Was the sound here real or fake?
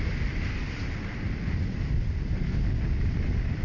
real